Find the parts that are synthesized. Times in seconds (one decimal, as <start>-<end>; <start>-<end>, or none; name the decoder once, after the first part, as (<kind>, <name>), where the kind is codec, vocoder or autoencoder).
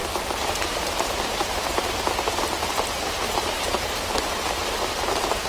0.0-5.5 (vocoder, BigVGAN v2)